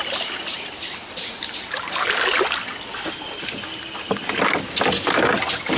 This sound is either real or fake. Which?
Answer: real